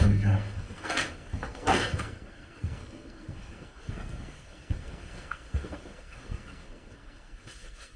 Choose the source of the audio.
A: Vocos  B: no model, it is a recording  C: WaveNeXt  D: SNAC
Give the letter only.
D